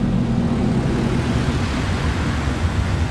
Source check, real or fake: fake